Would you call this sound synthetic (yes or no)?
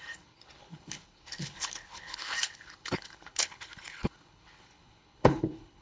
yes